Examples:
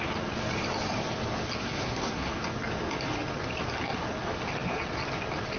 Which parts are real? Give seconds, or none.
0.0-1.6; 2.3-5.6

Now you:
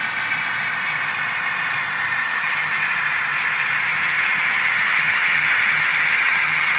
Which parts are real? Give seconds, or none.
0.0-2.2; 2.8-3.9